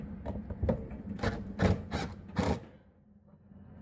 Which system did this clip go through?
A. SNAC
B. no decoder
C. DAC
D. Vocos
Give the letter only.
B